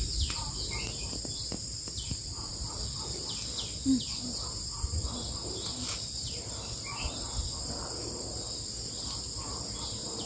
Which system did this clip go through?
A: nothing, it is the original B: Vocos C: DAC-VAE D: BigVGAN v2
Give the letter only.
A